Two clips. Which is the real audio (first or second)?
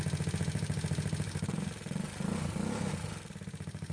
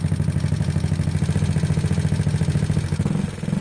second